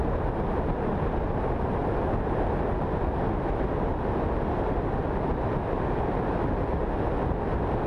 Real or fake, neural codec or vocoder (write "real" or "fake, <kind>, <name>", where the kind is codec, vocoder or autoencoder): real